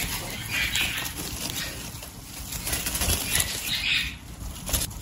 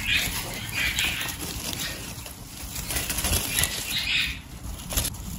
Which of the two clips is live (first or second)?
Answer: first